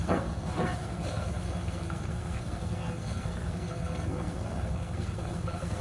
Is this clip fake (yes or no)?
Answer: yes